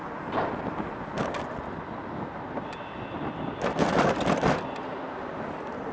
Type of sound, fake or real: real